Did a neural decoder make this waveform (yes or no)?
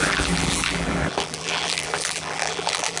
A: yes